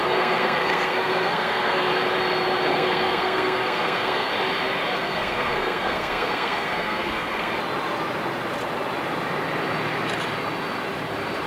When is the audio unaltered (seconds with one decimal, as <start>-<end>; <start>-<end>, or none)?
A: 1.9-2.7; 4.3-5.0; 7.5-11.5